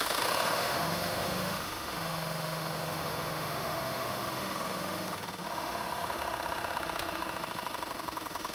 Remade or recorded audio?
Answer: remade